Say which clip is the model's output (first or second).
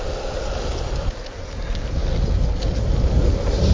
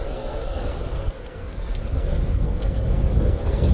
second